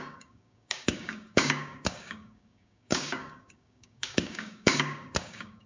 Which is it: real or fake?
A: fake